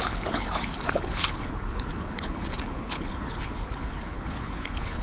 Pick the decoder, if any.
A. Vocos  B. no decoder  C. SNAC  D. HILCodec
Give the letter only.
D